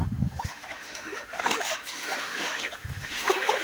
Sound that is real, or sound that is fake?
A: fake